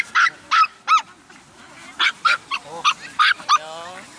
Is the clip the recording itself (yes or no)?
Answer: yes